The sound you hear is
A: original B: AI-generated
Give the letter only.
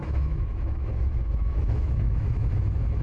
B